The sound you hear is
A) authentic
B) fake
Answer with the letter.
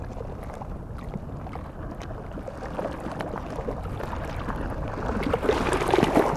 A